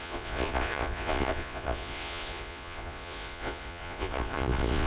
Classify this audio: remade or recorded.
remade